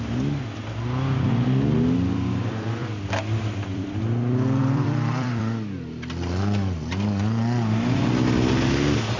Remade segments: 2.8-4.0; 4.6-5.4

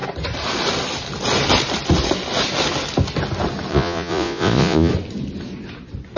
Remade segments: 3.7-4.9

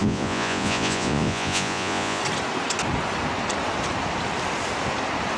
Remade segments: 0.0-2.2